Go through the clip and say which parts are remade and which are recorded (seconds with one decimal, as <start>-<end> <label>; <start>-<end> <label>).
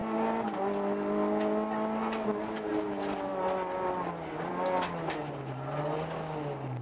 0.0-6.8 recorded